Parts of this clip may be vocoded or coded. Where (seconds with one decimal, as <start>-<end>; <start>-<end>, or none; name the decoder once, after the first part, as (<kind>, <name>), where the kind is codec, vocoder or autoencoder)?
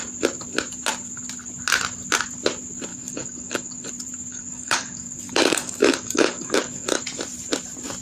2.9-3.9 (codec, DAC); 4.3-7.0